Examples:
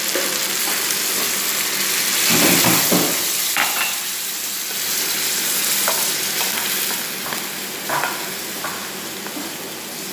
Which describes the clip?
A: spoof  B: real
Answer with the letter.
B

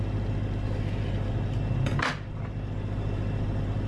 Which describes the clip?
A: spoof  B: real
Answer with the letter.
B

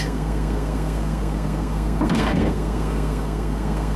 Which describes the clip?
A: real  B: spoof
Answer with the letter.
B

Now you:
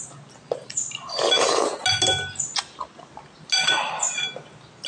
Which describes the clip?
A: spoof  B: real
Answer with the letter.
B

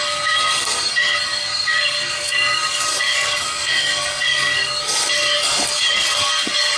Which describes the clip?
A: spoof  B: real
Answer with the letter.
A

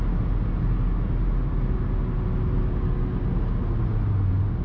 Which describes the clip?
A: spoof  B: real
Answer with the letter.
B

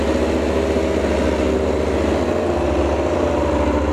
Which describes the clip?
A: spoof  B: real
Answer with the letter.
B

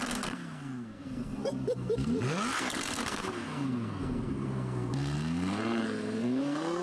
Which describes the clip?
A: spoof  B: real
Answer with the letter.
A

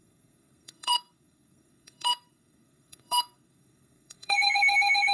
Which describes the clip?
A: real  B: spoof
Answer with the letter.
B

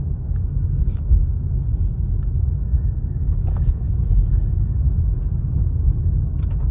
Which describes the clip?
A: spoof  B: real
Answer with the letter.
B